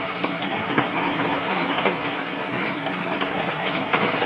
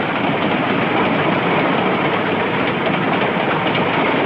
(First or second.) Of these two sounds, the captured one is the second